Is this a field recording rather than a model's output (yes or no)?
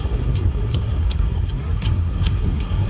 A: no